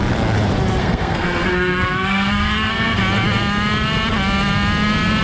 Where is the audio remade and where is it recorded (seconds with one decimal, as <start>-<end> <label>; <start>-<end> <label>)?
0.0-0.8 recorded; 0.8-3.0 remade; 3.0-5.2 recorded